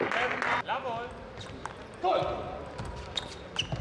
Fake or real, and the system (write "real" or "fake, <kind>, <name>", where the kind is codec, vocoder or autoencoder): real